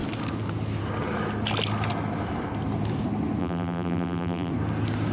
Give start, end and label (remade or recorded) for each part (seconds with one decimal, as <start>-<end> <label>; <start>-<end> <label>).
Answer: 0.0-3.4 recorded; 3.4-4.5 remade; 4.5-5.1 recorded